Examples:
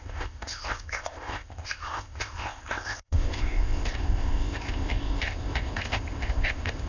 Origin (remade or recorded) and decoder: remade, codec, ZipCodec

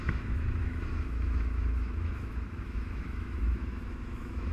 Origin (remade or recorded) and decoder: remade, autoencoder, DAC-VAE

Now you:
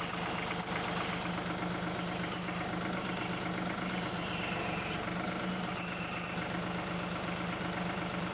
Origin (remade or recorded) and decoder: recorded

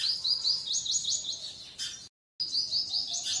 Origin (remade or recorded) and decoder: recorded